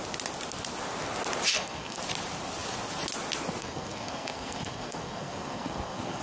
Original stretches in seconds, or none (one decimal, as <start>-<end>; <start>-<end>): 0.0-1.5; 2.0-3.6